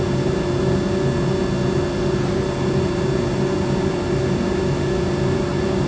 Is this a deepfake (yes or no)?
no